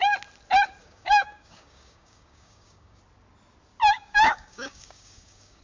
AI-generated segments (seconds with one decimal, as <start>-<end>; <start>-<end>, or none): 0.8-3.0; 3.8-5.6